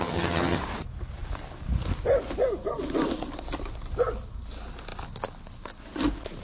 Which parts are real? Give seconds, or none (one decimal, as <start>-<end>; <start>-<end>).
0.6-6.4